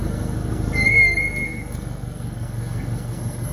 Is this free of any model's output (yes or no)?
no